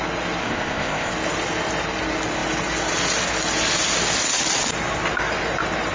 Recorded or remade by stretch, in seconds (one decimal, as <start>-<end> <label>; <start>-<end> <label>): 0.0-0.4 recorded; 0.4-1.1 remade; 1.1-5.9 recorded